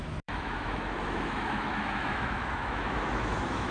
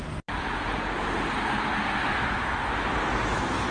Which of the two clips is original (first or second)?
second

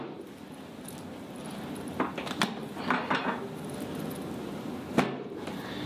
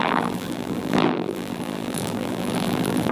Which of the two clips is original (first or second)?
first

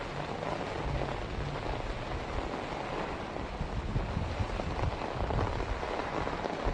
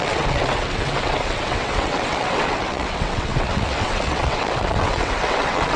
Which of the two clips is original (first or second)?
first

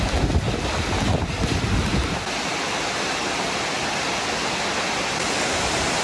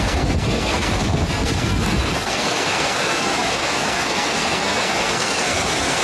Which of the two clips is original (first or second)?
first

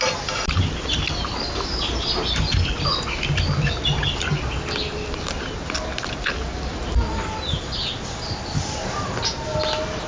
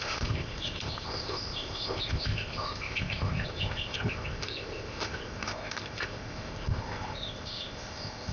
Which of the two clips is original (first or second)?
first